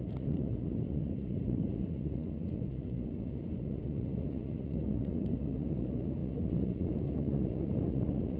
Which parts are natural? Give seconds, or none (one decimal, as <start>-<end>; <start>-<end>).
none